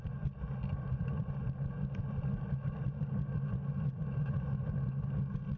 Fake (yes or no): no